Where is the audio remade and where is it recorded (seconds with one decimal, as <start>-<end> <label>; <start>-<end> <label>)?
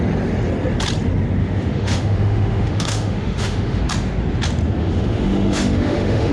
0.0-1.4 recorded; 1.4-3.8 remade; 3.8-4.8 recorded; 4.8-6.3 remade